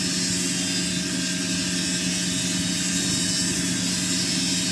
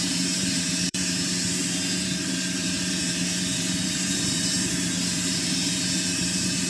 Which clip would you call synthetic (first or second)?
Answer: second